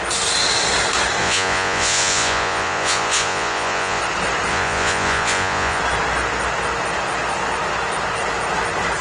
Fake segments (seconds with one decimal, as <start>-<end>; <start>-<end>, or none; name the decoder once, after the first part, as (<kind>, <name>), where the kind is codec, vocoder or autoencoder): 1.2-4.0 (vocoder, Vocos); 4.5-5.8